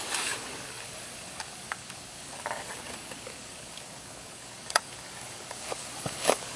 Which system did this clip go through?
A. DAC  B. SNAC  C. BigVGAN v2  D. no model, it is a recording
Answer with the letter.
A